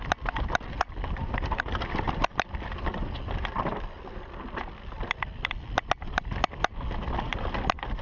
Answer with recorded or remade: recorded